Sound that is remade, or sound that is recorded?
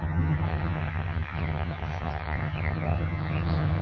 remade